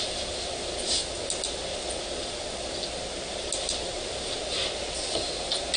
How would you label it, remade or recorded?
recorded